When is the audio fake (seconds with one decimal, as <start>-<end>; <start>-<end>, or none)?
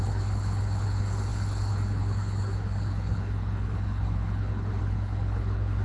0.0-5.8